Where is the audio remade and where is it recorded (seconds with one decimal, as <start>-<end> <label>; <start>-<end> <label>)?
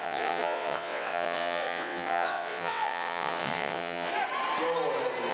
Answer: 0.0-4.1 remade; 4.1-5.3 recorded